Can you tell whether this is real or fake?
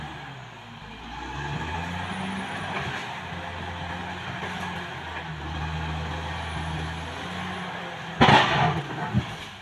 real